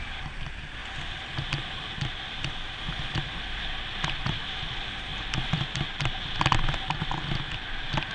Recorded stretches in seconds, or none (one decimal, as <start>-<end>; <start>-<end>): 0.8-4.3; 5.1-8.1